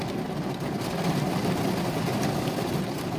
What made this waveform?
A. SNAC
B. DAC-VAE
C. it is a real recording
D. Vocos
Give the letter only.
C